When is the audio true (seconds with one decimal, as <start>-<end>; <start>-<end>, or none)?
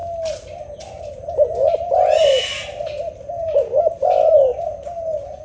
0.0-5.4